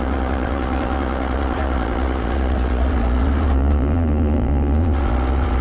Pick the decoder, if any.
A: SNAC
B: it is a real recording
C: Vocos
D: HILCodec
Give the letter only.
C